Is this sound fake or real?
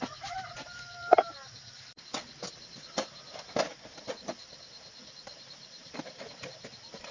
fake